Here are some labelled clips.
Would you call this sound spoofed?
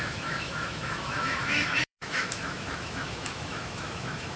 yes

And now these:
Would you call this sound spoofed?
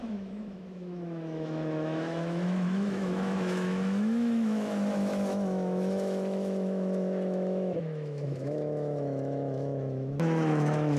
yes